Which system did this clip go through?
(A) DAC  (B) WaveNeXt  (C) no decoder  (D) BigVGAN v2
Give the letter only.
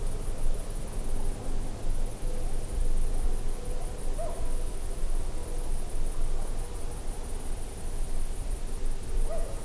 C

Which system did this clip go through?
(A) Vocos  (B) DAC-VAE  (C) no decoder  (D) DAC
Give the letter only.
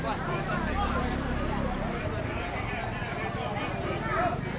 C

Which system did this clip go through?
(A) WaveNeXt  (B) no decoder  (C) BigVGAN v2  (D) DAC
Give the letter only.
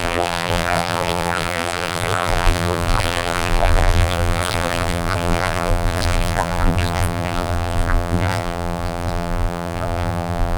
C